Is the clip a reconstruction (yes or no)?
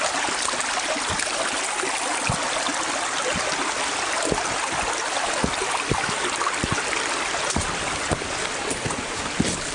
no